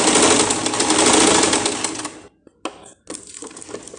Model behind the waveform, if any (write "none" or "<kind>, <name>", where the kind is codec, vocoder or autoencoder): none